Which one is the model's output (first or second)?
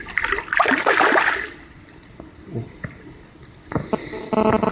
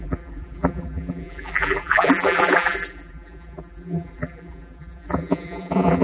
second